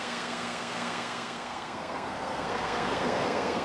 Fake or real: fake